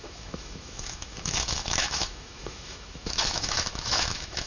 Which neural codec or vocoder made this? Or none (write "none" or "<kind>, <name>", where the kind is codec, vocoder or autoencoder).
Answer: autoencoder, DAC-VAE